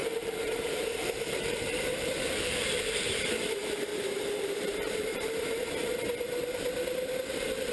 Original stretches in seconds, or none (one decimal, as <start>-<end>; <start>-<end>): 2.8-3.9; 5.3-7.7